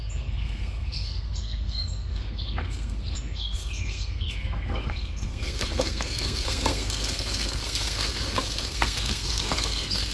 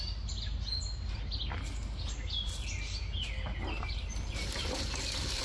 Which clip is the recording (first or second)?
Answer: second